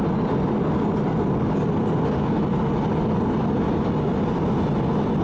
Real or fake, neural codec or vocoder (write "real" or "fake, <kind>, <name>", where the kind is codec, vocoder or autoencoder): real